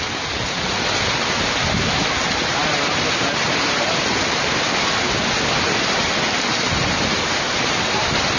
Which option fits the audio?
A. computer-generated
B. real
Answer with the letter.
B